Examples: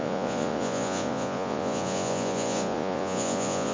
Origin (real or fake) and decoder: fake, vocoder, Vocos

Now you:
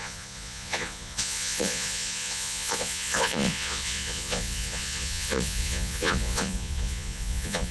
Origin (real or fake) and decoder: fake, vocoder, Vocos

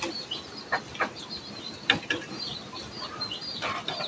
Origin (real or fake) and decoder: real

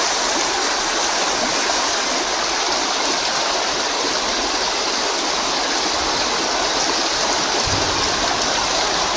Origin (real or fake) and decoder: real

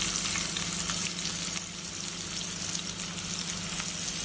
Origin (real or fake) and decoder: real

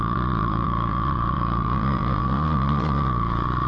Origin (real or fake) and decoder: fake, vocoder, Vocos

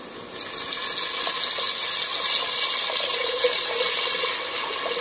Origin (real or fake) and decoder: real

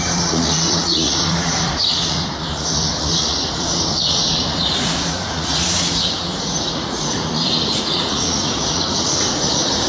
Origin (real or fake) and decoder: fake, vocoder, Vocos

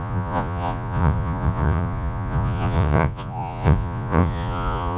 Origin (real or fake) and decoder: fake, vocoder, Vocos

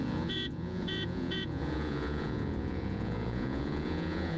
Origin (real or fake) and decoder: fake, vocoder, Vocos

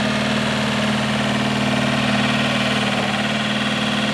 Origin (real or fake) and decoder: real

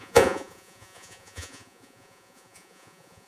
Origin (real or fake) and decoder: fake, vocoder, Vocos